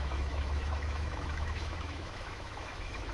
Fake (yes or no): yes